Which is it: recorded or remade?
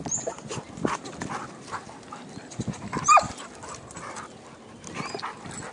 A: recorded